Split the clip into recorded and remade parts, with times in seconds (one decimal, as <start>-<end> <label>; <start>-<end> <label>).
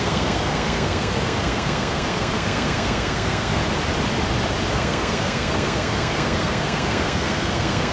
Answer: 0.0-3.6 remade; 3.6-4.7 recorded; 4.7-7.9 remade